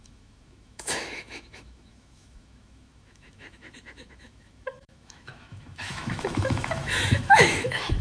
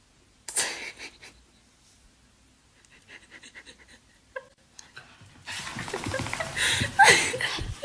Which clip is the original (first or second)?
second